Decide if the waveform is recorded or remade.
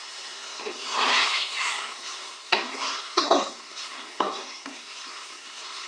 remade